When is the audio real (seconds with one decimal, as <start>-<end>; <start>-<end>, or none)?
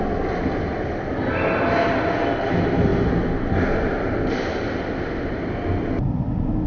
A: 0.0-6.7